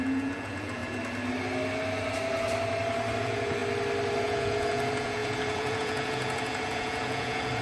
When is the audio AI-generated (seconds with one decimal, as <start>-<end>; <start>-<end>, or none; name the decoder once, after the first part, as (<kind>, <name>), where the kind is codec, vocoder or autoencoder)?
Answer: 0.0-0.8 (vocoder, Vocos); 3.2-3.6; 4.2-7.6